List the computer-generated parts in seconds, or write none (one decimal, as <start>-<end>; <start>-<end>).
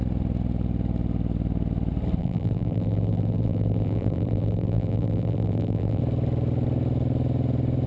2.2-6.0